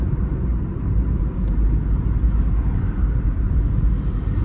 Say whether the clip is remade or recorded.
remade